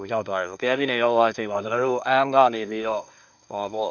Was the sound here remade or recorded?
remade